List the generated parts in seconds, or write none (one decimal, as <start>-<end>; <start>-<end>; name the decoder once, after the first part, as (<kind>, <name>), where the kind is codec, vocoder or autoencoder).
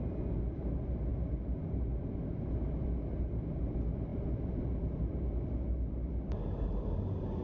none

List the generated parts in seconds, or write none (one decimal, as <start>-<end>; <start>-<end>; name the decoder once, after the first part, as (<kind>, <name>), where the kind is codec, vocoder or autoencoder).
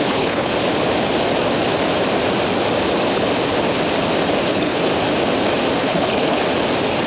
0.0-0.5 (codec, HILCodec); 4.5-4.9; 5.8-6.4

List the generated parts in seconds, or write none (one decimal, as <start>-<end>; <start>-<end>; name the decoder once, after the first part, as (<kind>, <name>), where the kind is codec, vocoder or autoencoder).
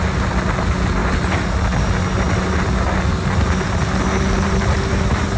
none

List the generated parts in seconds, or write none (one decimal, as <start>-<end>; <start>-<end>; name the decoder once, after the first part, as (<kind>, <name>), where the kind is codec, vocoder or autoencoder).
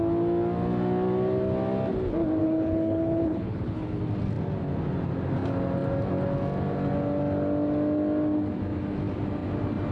2.4-4.0 (codec, HILCodec)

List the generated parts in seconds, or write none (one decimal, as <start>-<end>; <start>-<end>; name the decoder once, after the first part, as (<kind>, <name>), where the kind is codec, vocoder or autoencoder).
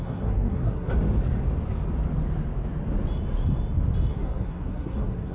0.0-0.9 (codec, SNAC); 4.1-5.3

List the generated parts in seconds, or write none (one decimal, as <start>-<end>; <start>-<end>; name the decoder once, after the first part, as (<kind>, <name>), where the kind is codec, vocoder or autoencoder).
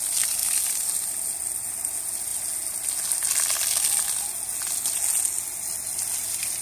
none